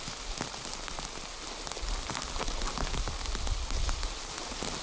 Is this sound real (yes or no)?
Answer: yes